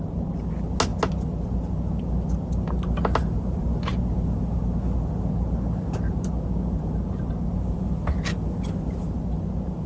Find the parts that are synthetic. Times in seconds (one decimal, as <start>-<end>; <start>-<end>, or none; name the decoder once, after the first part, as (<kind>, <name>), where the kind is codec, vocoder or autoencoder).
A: none